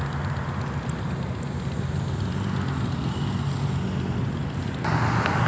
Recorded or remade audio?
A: recorded